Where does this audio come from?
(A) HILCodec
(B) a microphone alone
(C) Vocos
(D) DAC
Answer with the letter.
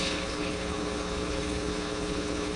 A